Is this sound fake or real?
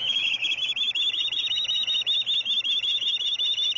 fake